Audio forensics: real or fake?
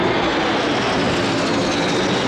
real